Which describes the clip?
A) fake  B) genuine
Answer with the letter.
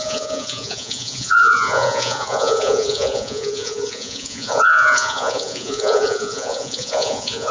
A